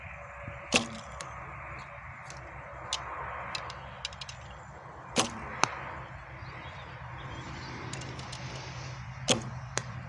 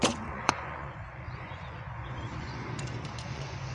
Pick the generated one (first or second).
second